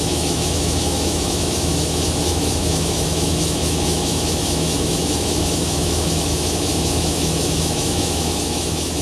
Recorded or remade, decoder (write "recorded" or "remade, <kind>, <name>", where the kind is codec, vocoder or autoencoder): remade, autoencoder, DAC-VAE